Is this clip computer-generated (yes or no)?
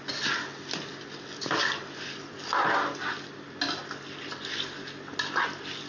no